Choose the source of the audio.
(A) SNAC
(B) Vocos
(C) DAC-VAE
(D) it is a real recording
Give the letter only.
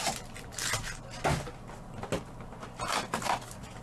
D